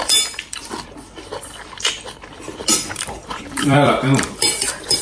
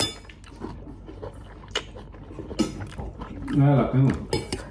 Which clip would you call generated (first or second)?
first